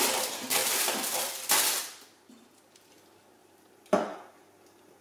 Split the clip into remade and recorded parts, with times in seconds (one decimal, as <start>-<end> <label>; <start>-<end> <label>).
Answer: 0.0-0.6 recorded; 0.6-1.3 remade; 1.3-1.8 recorded; 1.8-2.9 remade; 2.9-3.4 recorded; 3.4-4.4 remade; 4.4-5.0 recorded